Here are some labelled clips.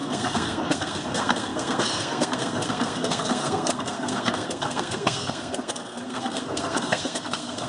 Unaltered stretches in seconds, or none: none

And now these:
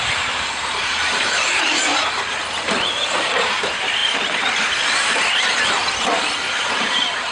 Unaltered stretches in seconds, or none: 4.0-6.7

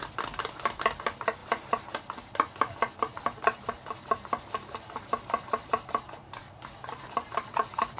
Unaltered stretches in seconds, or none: 1.4-5.0